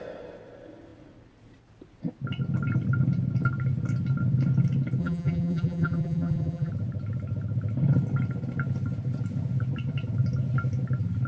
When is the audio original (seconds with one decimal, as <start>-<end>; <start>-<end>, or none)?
0.0-5.0; 6.7-11.3